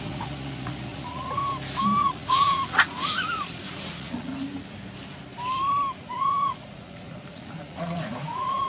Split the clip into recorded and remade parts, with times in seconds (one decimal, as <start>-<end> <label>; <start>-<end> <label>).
0.0-1.4 remade; 1.4-2.0 recorded; 2.0-4.3 remade; 4.3-6.0 recorded; 6.0-8.7 remade